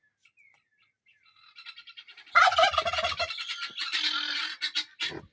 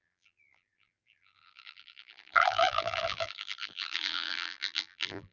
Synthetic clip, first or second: second